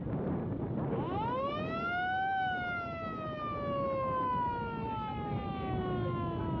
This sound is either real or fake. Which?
real